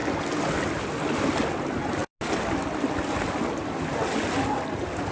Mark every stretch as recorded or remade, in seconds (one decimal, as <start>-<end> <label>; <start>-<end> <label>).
0.0-5.1 recorded